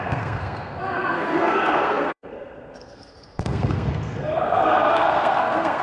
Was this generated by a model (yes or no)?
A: yes